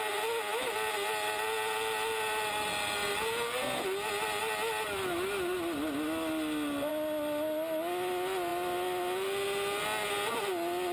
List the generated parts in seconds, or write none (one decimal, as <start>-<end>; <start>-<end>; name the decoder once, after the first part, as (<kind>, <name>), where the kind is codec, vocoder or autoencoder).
none